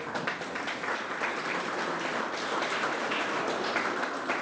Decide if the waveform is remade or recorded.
recorded